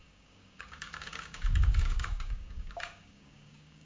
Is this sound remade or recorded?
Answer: remade